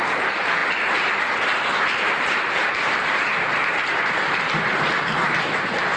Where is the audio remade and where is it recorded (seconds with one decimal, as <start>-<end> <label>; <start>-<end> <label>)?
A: 0.0-0.6 remade; 0.6-1.9 recorded; 1.9-3.3 remade; 3.3-3.9 recorded; 3.9-6.0 remade